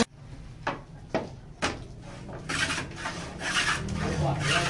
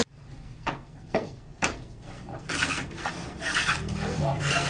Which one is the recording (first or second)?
first